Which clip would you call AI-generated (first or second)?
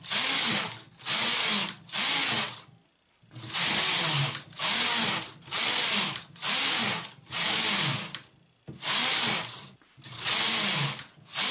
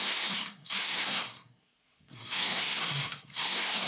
second